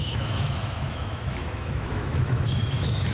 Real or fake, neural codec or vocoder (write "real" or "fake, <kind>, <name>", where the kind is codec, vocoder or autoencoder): fake, autoencoder, DAC-VAE